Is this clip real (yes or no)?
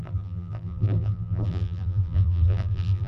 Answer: no